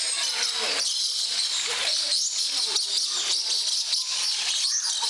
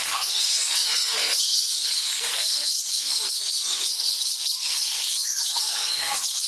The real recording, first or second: first